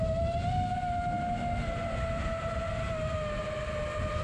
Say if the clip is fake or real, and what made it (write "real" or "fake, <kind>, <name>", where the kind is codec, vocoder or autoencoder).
real